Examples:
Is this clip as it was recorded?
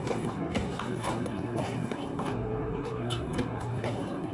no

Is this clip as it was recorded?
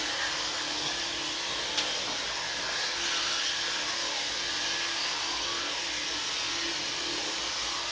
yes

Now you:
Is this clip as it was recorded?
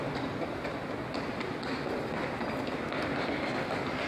yes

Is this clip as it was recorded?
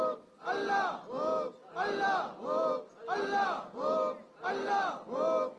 yes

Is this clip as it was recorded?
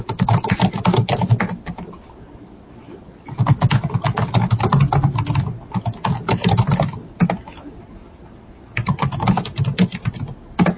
yes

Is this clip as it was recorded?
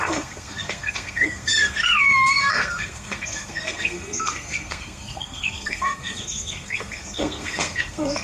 no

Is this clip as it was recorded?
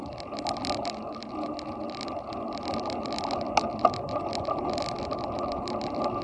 yes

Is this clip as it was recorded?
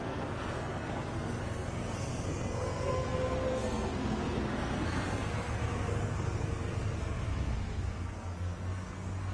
no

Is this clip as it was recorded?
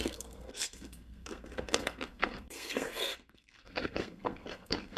no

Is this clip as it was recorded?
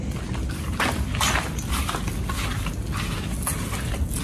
yes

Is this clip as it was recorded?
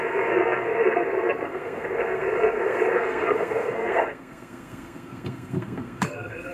no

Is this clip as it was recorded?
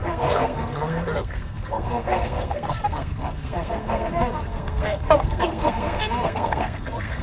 no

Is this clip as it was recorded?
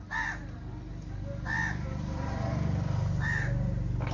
yes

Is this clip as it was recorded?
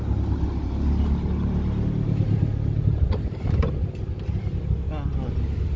yes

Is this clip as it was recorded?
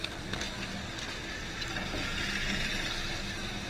yes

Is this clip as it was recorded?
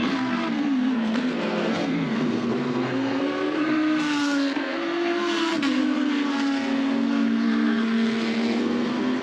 no